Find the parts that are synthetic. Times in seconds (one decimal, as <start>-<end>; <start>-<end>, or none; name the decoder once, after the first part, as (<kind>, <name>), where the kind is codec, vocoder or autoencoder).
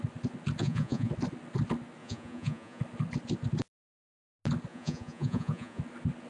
0.6-1.1 (vocoder, Vocos); 2.0-2.8; 4.7-5.8